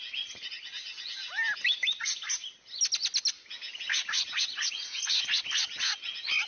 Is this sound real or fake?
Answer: real